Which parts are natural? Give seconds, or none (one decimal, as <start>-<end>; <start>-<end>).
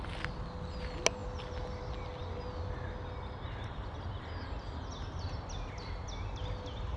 0.0-7.0